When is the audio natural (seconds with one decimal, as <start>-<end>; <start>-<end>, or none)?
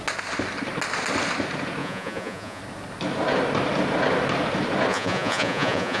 0.0-1.8; 2.6-4.9